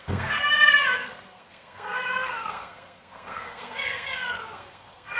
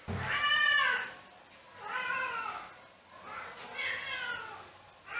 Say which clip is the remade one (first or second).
first